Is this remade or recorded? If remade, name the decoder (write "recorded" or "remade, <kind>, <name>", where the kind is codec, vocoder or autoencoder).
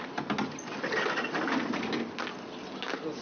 recorded